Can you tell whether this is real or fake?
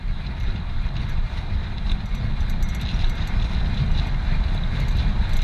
real